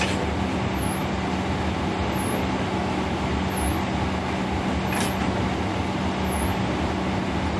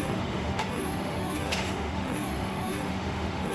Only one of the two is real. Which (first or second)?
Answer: first